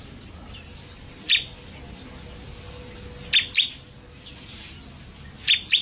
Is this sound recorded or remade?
recorded